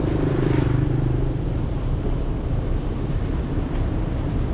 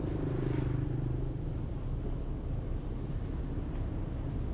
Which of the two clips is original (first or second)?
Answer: second